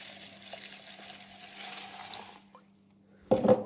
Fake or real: real